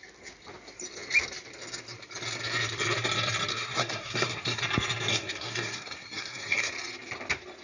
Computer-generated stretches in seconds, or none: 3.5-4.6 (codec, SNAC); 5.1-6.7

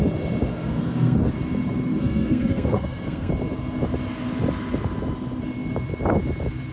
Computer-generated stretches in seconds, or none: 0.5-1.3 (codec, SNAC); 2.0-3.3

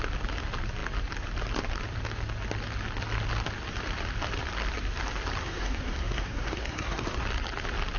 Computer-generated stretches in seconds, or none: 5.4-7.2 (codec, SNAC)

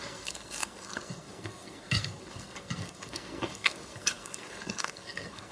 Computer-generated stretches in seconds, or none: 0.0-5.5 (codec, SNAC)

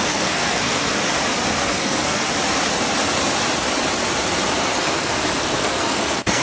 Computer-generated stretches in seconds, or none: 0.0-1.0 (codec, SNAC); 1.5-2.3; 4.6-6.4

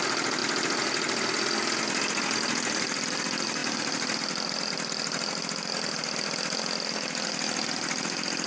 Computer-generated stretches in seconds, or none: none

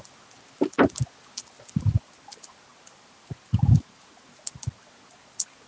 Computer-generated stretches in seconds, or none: none